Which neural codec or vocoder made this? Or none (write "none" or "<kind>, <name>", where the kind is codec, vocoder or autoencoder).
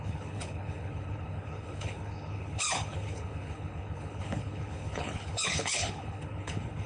codec, HILCodec